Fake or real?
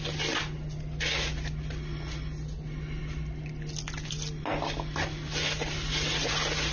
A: real